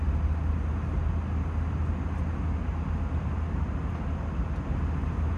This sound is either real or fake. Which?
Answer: real